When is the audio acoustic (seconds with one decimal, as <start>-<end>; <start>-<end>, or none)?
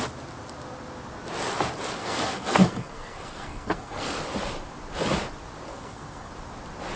0.0-2.0; 4.2-5.7; 6.3-7.0